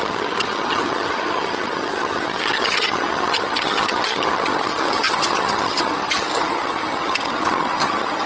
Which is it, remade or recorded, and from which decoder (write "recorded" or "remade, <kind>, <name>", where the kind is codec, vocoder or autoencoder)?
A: remade, vocoder, HiFi-GAN